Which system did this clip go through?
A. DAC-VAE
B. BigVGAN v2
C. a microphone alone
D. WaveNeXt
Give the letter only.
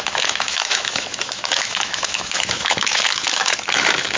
A